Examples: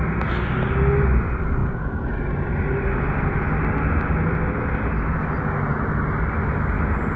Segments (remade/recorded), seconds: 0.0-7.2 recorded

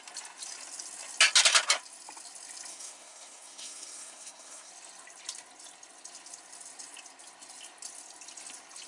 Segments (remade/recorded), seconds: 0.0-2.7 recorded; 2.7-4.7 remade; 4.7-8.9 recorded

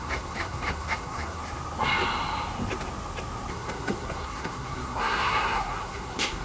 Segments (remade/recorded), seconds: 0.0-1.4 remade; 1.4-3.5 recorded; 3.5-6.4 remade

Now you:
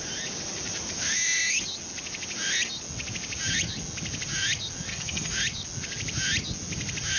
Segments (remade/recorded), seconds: 0.0-4.9 recorded; 4.9-5.4 remade; 5.4-7.2 recorded

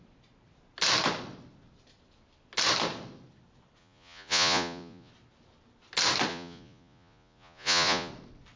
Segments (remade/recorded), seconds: 0.0-3.8 recorded; 3.8-5.1 remade; 5.1-6.3 recorded; 6.3-8.1 remade; 8.1-8.6 recorded

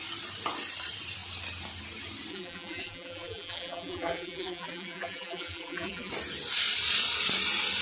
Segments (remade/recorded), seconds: 0.0-2.3 recorded; 2.3-6.1 remade; 6.1-7.8 recorded

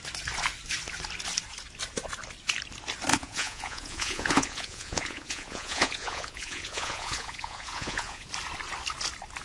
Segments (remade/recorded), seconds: 0.0-3.1 recorded; 3.1-8.3 remade; 8.3-9.4 recorded

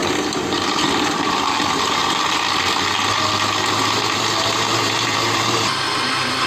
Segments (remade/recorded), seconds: 0.0-0.5 recorded; 0.5-2.0 remade; 2.0-4.4 recorded; 4.4-6.5 remade